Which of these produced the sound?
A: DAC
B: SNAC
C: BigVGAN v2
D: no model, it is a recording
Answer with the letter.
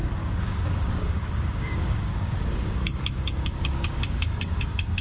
A